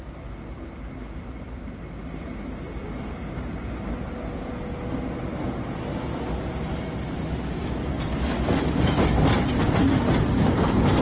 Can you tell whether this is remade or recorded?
recorded